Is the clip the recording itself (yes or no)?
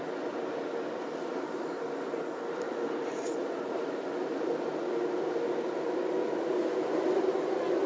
yes